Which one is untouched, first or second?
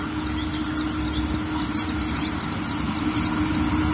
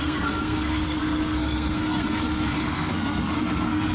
first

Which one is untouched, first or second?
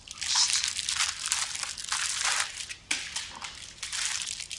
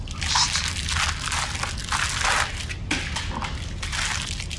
second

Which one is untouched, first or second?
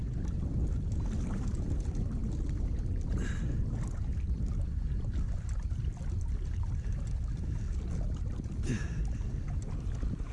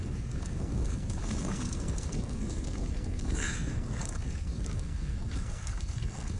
first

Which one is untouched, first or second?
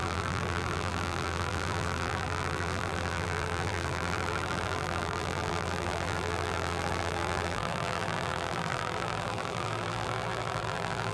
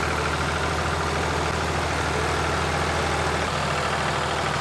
second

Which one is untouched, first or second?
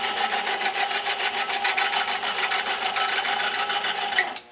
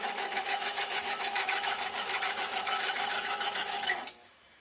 first